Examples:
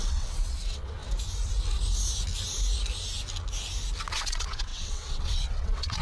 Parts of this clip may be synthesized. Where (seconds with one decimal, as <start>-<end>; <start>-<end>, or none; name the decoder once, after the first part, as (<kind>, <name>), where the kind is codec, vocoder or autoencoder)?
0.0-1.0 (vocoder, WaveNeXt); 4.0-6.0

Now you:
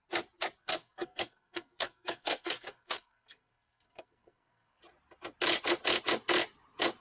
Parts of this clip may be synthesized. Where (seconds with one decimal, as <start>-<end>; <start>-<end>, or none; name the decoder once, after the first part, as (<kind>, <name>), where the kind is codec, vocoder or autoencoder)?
0.6-4.8 (codec, SNAC)

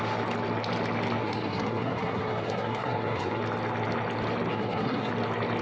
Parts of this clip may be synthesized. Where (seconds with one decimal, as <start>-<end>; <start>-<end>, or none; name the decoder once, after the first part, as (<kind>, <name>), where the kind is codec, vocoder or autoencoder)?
1.2-3.4 (codec, SNAC); 4.5-5.1

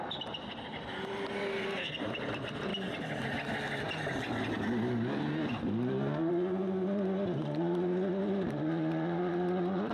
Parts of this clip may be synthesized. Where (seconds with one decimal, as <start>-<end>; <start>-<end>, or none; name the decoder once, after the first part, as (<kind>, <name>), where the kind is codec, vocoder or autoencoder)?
1.5-2.0 (codec, SNAC)

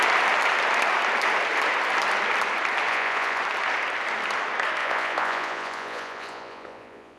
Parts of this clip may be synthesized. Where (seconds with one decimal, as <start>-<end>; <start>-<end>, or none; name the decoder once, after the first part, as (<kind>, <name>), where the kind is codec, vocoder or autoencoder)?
2.9-3.4 (vocoder, Vocos); 4.8-7.2

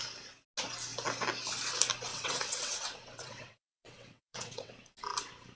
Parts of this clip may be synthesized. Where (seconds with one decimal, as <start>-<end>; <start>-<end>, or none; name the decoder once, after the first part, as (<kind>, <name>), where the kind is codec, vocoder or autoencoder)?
2.1-4.7 (vocoder, WaveNeXt)

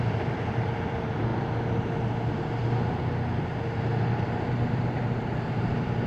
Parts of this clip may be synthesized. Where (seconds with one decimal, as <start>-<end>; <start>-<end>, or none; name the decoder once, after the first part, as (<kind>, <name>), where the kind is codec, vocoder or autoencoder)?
0.0-1.3 (vocoder, BigVGAN v2); 5.0-6.1